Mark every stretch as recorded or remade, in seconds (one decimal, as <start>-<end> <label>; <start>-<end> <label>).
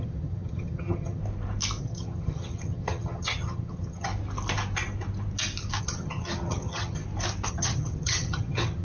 0.0-1.2 remade; 1.2-1.8 recorded; 1.8-4.1 remade; 4.1-5.8 recorded; 5.8-7.0 remade; 7.0-7.5 recorded; 7.5-8.8 remade